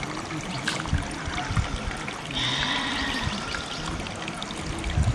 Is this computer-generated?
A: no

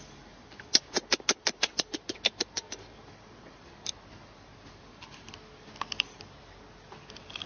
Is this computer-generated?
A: no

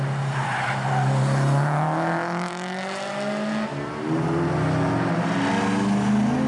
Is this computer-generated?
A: no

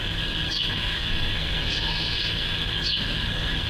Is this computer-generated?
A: yes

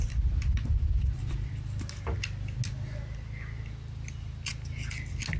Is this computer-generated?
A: no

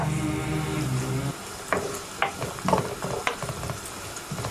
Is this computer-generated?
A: no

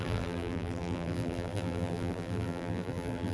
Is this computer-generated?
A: yes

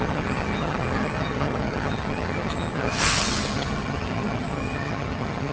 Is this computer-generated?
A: yes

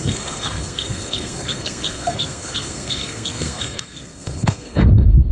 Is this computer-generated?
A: yes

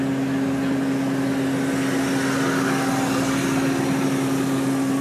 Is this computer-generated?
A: no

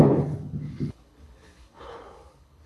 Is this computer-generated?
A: yes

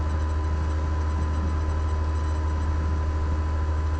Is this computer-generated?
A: no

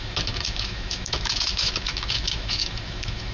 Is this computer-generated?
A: yes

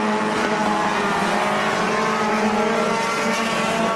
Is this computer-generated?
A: no